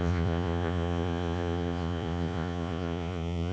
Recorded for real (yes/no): no